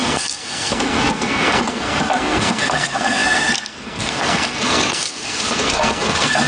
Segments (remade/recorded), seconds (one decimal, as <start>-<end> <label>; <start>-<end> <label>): 0.0-6.5 remade